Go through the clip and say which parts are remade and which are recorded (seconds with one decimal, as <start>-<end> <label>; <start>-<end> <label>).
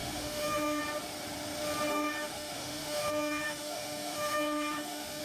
0.0-0.8 remade; 0.8-1.9 recorded; 1.9-5.2 remade